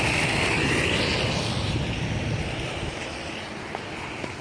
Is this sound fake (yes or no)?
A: no